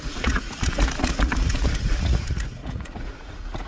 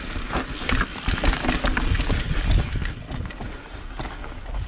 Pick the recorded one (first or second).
second